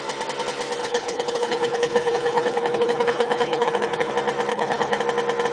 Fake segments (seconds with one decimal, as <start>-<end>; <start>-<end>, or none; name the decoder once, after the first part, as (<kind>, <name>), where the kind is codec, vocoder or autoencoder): 0.8-4.1 (codec, HILCodec); 4.5-5.0